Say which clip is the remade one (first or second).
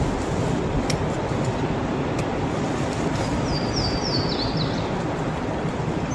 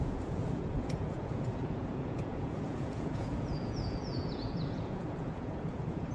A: second